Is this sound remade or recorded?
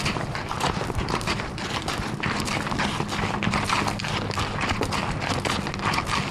recorded